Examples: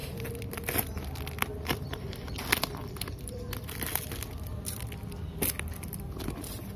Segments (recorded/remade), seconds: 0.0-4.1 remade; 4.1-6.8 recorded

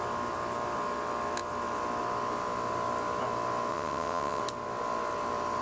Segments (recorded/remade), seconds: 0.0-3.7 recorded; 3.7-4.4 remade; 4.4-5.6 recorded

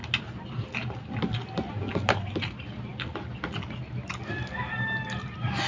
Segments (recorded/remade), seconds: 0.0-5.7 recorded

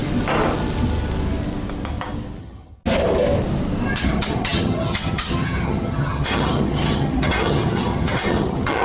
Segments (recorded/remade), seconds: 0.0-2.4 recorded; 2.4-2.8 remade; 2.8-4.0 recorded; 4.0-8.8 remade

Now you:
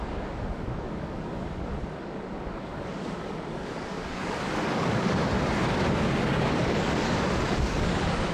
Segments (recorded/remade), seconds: 0.0-5.2 remade; 5.2-6.2 recorded; 6.2-8.3 remade

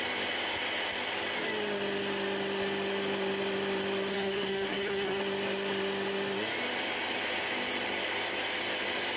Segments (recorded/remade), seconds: 0.0-4.1 recorded; 4.1-5.2 remade; 5.2-9.2 recorded

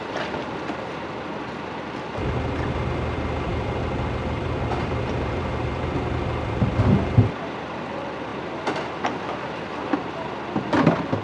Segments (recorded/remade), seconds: 0.0-11.2 remade